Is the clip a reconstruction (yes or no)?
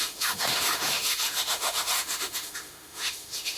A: yes